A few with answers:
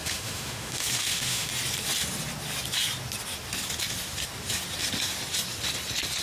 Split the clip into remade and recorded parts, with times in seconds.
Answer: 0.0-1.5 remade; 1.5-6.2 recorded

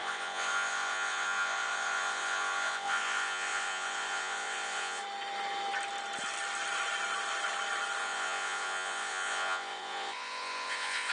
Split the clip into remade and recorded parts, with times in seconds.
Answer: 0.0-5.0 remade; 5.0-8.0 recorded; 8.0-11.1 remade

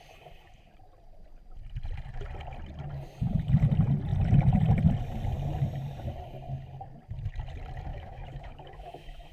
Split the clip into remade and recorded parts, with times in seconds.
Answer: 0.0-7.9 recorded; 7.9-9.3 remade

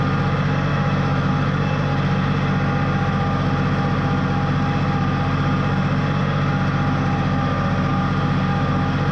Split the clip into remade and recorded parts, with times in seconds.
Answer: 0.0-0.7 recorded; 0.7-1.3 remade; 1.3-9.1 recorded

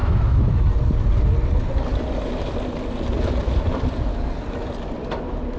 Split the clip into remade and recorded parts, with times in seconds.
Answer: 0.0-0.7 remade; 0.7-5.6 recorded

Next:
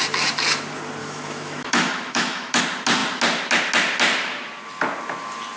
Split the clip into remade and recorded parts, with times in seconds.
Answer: 0.0-1.0 recorded; 1.0-2.6 remade; 2.6-5.6 recorded

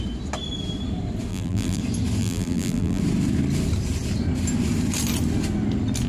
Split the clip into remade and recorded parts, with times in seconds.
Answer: 0.0-1.3 recorded; 1.3-1.8 remade; 1.8-2.2 recorded; 2.2-3.0 remade; 3.0-6.1 recorded